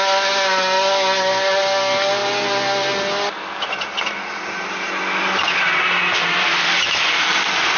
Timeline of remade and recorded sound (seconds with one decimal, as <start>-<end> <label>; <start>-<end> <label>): 0.0-7.8 recorded